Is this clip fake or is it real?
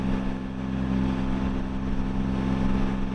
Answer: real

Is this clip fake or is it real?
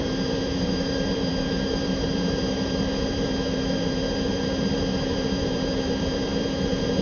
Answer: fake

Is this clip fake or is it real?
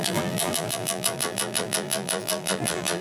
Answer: fake